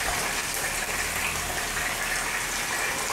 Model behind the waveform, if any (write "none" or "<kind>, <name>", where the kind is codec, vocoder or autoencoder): none